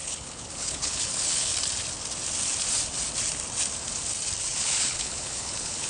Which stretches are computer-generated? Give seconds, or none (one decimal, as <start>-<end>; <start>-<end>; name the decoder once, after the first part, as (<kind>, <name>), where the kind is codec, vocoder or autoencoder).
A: 0.0-1.5 (codec, HILCodec); 4.4-5.9